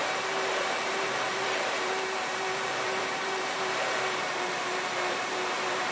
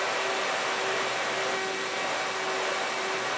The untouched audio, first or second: second